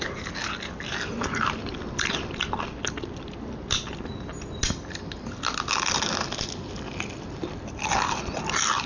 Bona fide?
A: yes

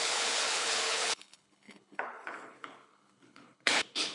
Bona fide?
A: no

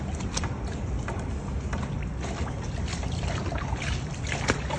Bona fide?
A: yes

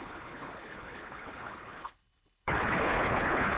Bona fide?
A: no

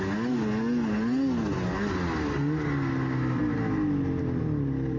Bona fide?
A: yes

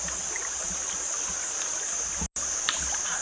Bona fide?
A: yes